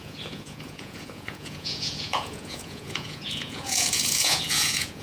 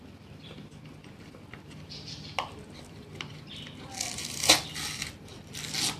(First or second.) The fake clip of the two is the first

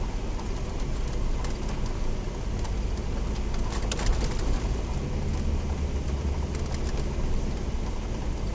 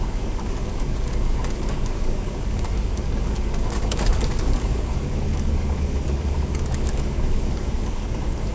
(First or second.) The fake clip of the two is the second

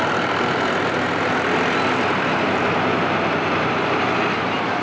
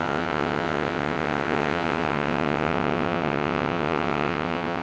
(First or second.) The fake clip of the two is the second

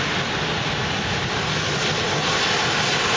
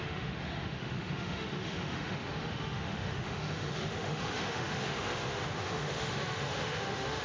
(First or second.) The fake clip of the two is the second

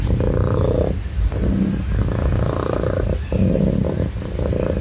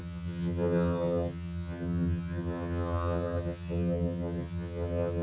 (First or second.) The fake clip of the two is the second